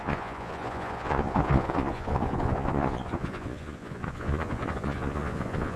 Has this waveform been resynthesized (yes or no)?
yes